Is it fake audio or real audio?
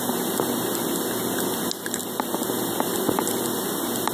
fake